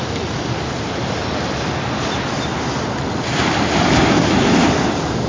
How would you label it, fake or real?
real